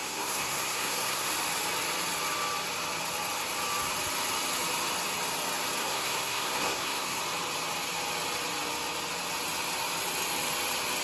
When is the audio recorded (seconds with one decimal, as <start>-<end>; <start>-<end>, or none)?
1.3-5.8; 7.2-11.0